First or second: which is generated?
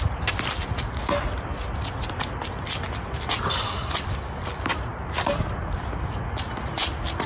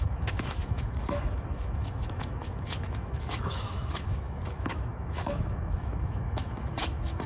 second